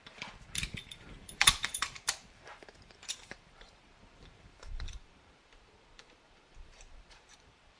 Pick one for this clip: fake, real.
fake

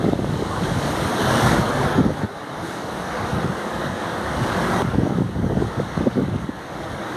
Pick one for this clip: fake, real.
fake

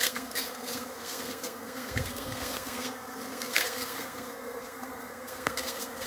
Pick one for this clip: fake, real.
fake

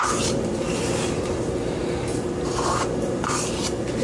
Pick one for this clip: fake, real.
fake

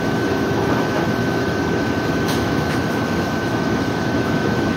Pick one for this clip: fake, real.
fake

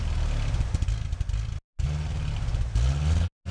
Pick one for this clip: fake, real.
real